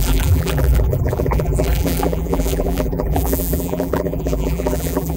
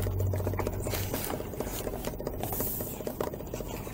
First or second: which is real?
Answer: second